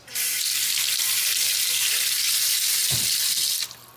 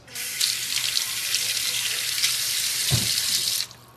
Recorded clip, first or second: first